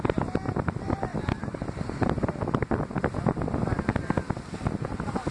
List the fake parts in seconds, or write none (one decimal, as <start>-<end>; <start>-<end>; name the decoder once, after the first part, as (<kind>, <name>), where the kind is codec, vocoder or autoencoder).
none